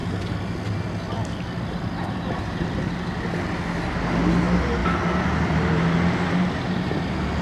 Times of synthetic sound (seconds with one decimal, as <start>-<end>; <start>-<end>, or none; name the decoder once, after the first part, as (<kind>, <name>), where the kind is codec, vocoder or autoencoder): none